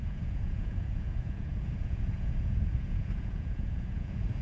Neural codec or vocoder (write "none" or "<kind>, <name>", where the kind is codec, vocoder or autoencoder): vocoder, Vocos